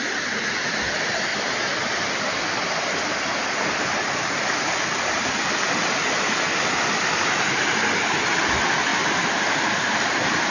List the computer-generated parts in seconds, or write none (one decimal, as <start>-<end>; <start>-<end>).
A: 8.9-10.5